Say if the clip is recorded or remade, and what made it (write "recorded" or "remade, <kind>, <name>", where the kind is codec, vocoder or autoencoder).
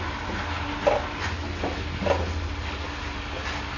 recorded